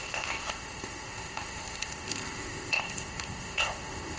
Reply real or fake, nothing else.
fake